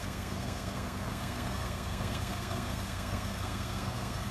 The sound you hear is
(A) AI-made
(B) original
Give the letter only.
A